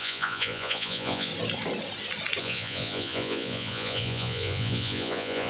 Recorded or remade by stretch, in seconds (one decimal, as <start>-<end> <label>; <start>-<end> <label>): 0.0-1.3 remade; 1.3-2.4 recorded; 2.4-5.5 remade